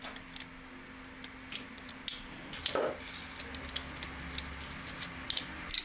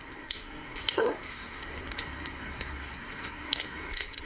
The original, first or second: first